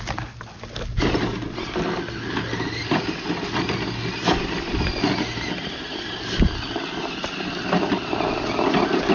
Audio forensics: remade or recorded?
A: recorded